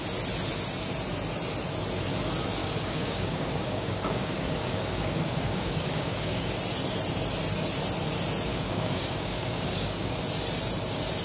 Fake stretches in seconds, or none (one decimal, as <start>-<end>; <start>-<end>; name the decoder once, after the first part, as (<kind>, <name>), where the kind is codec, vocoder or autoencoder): 2.6-6.5 (codec, DAC); 8.5-10.2